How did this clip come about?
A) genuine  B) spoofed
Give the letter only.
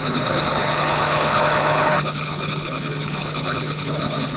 B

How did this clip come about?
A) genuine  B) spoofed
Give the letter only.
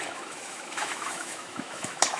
B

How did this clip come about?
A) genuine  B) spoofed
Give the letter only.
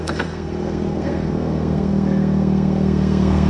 B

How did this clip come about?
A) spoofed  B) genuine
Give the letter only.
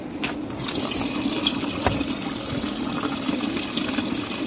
B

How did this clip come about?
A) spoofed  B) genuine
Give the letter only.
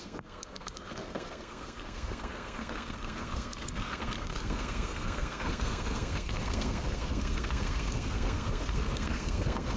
A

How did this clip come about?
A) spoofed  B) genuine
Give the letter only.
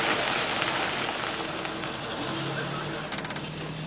B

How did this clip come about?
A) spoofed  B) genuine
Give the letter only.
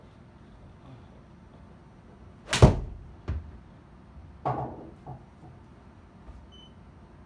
B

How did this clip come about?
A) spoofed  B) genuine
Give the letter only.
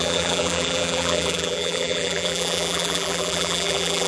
A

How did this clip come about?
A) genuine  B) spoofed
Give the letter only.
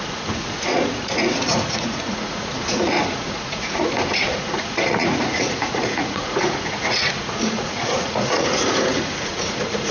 B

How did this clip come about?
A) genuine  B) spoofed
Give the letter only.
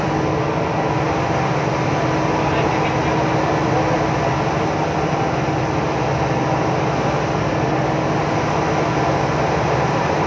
A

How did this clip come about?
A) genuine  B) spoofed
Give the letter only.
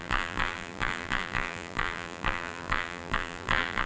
B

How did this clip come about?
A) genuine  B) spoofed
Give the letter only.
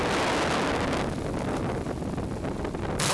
A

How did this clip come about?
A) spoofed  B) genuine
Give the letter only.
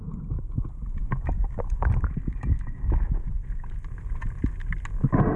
B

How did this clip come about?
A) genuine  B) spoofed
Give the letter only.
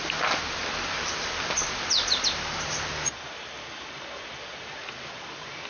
B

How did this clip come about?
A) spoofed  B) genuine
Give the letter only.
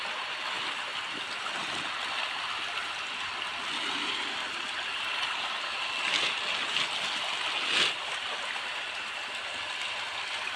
B